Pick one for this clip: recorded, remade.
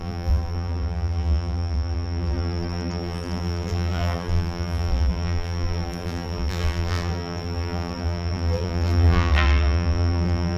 remade